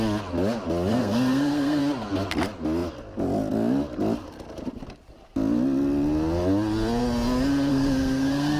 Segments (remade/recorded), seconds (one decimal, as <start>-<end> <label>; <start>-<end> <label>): 0.0-0.9 recorded; 0.9-1.8 remade; 1.8-7.7 recorded; 7.7-8.6 remade